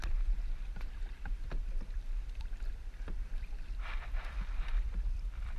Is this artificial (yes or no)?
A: yes